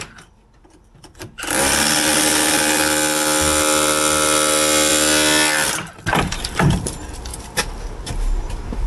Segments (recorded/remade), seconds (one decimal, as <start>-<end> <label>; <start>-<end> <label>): 0.0-8.9 recorded